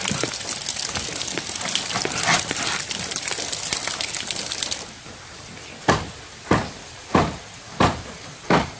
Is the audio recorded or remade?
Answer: recorded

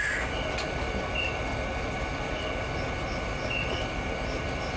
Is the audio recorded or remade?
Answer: recorded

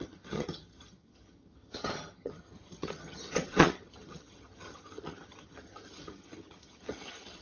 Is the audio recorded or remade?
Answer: remade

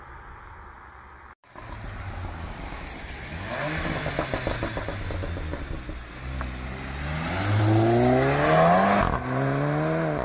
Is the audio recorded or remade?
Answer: recorded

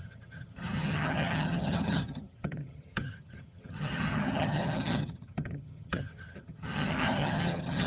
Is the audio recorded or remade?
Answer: remade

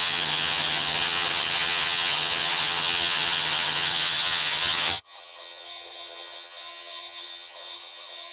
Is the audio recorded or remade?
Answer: remade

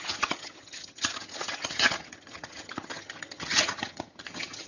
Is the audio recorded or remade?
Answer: remade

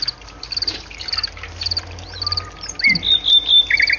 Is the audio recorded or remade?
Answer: recorded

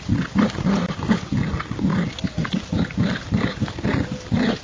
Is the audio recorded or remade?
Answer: recorded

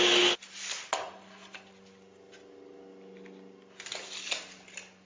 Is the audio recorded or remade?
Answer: recorded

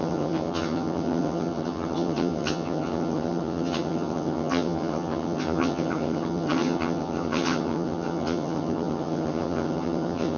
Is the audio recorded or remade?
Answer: remade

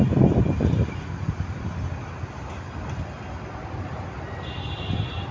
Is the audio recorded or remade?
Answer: recorded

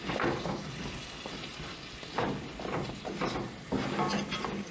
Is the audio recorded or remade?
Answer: recorded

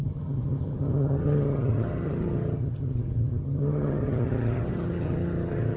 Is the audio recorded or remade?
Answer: remade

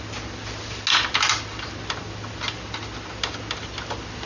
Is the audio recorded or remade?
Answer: recorded